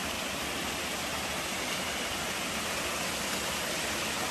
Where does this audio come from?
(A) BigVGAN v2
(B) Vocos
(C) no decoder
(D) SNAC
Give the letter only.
C